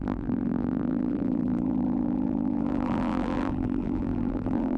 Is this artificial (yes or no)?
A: yes